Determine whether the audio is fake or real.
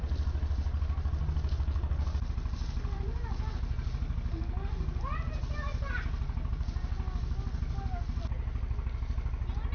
real